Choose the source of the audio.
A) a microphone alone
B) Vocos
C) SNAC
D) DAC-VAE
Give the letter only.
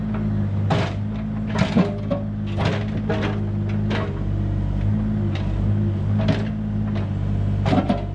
A